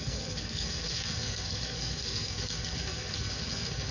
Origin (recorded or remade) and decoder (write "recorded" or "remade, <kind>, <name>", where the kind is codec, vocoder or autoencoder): remade, codec, SNAC